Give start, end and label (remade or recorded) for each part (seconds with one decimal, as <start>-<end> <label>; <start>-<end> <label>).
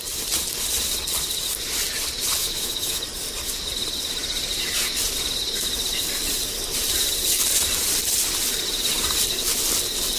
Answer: 0.0-2.4 recorded; 2.4-3.0 remade; 3.0-10.2 recorded